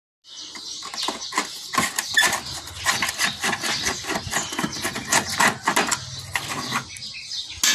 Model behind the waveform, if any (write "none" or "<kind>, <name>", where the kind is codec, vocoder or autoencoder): none